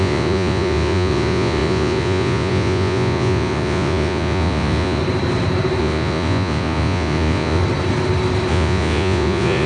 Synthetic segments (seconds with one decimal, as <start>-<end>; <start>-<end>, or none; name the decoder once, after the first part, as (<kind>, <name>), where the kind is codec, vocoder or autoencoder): 0.0-5.0 (vocoder, Vocos); 5.8-7.6; 8.5-9.7